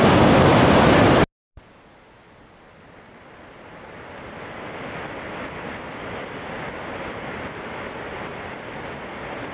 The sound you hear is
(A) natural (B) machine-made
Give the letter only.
A